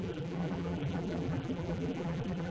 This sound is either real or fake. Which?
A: fake